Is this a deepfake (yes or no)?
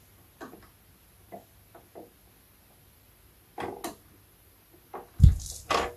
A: no